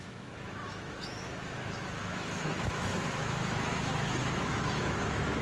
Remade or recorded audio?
remade